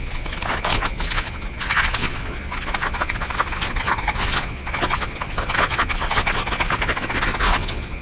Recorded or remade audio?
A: remade